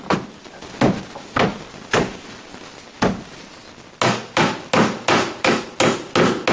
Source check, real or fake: real